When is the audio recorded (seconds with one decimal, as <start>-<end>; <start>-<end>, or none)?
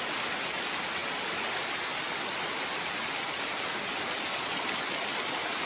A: 0.0-5.7